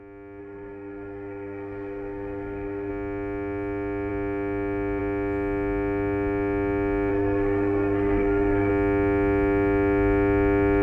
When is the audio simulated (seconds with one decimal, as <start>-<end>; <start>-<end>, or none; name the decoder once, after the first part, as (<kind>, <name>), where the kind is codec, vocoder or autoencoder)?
0.4-2.9 (codec, SNAC); 7.1-8.7